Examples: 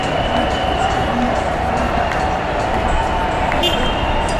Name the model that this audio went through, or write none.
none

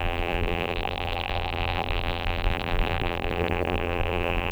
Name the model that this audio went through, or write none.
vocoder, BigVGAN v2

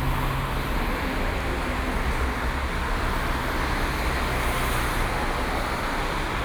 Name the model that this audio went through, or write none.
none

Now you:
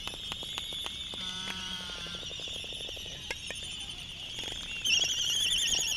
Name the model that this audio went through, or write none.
vocoder, BigVGAN v2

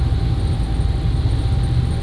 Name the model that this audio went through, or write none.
none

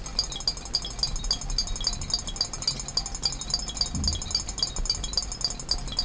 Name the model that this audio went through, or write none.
none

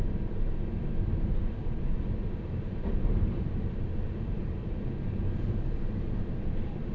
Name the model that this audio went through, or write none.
vocoder, BigVGAN v2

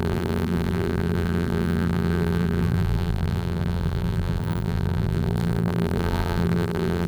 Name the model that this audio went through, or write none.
vocoder, BigVGAN v2